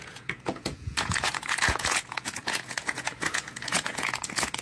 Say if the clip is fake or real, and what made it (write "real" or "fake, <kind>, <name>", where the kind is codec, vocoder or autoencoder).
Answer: fake, vocoder, Vocos